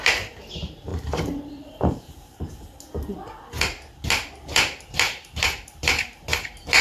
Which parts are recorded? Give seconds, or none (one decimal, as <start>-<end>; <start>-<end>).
0.0-0.9; 2.8-6.8